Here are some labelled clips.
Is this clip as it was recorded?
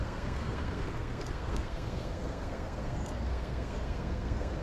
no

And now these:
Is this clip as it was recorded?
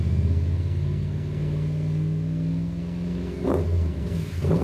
no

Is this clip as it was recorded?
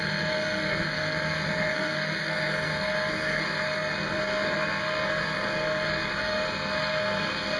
no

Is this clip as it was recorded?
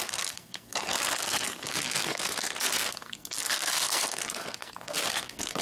no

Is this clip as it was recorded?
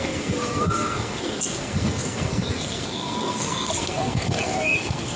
no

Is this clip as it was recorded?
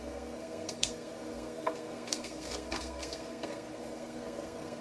no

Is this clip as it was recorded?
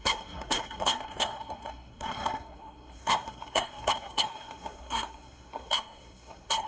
no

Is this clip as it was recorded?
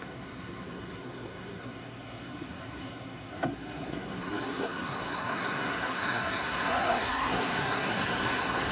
no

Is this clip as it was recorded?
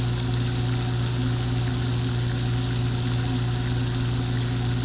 yes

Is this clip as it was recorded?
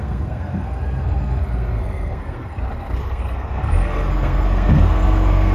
no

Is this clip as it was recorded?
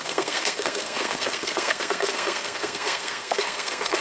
no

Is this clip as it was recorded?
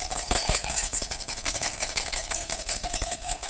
no